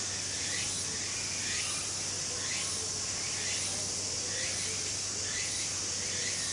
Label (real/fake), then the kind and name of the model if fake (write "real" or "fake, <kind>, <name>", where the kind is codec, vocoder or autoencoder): real